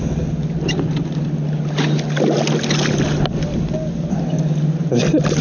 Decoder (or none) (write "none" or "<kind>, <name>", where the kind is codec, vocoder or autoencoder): none